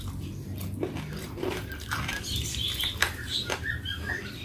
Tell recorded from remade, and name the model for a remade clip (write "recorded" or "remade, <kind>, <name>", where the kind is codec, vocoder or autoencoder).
remade, vocoder, BigVGAN v2